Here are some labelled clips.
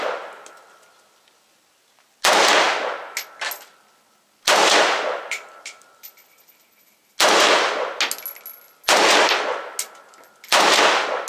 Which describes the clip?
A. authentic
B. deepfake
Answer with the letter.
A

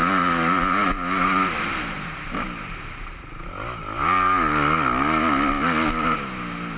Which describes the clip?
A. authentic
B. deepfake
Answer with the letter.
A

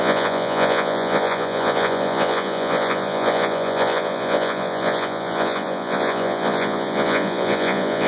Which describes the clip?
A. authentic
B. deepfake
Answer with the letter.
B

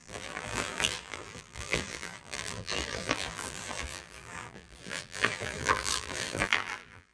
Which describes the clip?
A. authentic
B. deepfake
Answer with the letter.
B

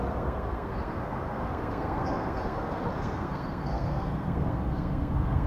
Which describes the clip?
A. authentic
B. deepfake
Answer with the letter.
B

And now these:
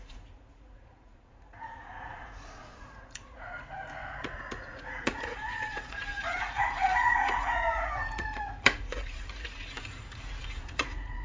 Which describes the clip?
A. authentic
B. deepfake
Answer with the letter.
B